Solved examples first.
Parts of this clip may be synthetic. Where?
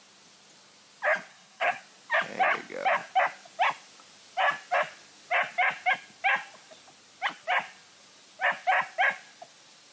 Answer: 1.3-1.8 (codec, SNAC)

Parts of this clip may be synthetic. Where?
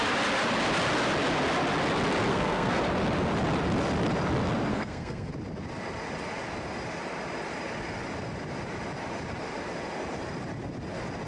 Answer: 2.3-2.8 (codec, SNAC); 4.7-5.3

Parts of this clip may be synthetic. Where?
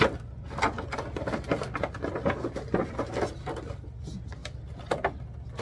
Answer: none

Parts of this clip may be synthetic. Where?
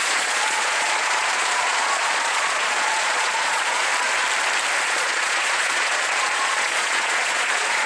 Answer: 0.0-3.9 (vocoder, Vocos); 4.8-7.9